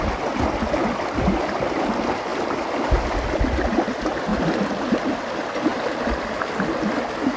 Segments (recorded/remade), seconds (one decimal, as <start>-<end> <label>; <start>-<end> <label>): 0.0-7.4 recorded